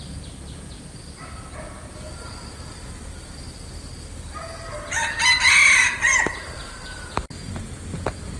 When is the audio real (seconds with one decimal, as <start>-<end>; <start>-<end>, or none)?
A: 0.0-6.6; 7.6-8.4